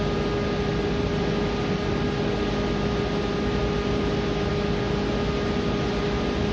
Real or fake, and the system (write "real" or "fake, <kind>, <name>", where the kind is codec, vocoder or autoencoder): real